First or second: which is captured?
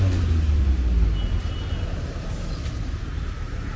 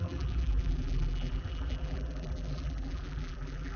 first